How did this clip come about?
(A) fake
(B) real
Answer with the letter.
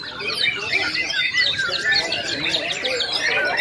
B